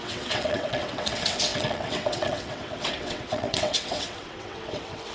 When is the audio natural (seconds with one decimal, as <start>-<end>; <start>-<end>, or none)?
none